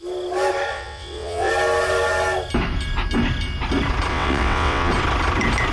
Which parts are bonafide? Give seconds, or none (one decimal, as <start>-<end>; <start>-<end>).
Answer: 0.0-0.7; 1.5-4.1; 4.9-5.7